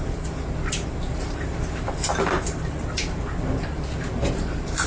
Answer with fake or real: fake